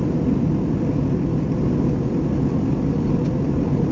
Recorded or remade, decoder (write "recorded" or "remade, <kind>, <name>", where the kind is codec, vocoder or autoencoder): recorded